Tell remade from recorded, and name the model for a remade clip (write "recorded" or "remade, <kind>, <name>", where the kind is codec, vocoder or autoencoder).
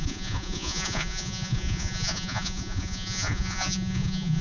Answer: remade, vocoder, Vocos